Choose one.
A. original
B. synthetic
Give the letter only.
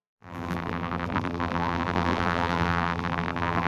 B